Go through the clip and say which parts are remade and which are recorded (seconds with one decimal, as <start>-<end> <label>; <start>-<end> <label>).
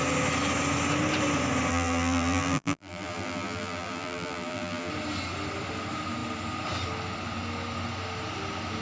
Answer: 0.0-1.7 recorded; 1.7-4.9 remade; 4.9-8.8 recorded